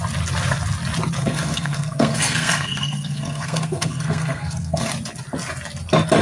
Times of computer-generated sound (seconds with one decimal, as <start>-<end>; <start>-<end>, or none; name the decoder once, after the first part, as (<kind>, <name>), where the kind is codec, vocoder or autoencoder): 1.2-4.9 (codec, SNAC)